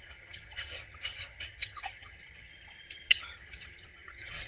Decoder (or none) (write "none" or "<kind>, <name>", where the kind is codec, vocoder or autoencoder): vocoder, HiFi-GAN